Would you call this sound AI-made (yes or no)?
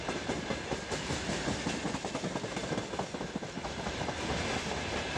no